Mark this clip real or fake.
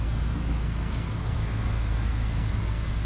fake